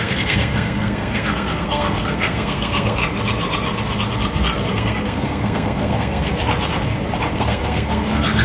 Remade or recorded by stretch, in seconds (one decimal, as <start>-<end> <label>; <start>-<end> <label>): 0.0-3.0 remade; 3.0-4.7 recorded; 4.7-6.3 remade; 6.3-7.3 recorded; 7.3-8.4 remade